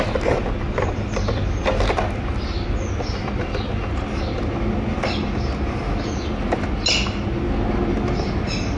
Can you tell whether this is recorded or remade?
recorded